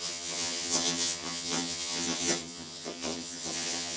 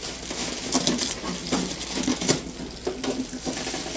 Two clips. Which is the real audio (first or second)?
second